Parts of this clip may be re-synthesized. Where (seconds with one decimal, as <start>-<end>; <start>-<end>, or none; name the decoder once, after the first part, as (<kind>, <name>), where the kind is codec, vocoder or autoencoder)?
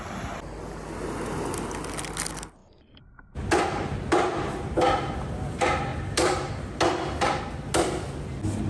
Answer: none